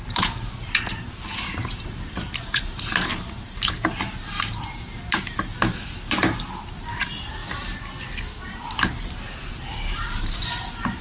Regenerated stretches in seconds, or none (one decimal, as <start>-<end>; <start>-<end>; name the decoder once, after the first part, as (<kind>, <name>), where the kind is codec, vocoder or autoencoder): 0.0-7.4 (vocoder, BigVGAN v2); 9.5-11.0